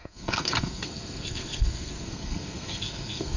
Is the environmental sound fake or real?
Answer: fake